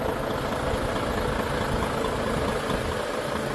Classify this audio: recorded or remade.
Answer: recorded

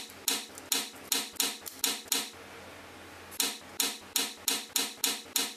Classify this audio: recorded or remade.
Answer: recorded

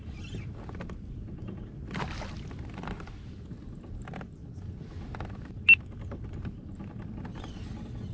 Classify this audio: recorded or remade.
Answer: recorded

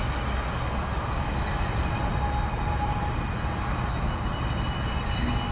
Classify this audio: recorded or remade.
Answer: recorded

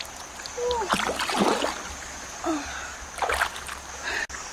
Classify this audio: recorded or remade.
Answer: recorded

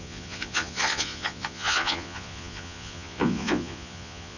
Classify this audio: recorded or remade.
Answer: remade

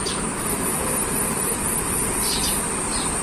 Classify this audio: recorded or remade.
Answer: recorded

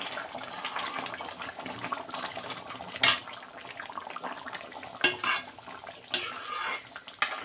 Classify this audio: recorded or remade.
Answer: recorded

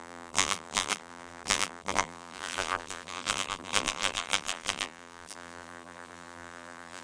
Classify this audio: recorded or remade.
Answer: remade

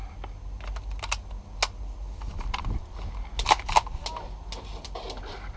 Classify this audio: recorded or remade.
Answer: recorded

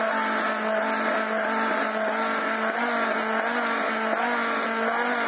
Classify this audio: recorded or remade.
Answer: recorded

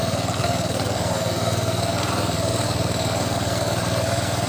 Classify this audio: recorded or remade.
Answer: remade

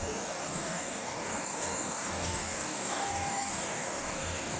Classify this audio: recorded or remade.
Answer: remade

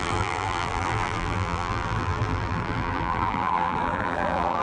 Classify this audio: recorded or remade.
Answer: remade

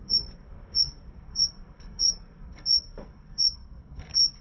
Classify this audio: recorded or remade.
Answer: remade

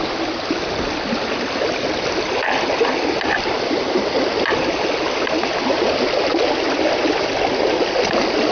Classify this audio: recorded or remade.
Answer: recorded